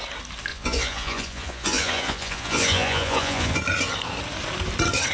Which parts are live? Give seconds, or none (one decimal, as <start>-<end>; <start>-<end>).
0.0-0.5; 3.6-5.1